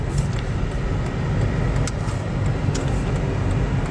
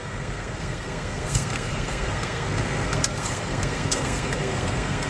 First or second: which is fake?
second